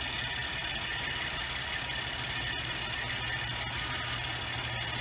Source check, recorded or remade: recorded